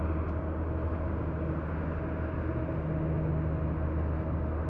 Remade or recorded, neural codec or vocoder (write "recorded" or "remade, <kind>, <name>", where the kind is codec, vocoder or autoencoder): recorded